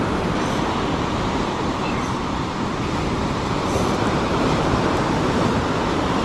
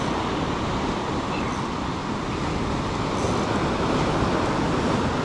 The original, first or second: second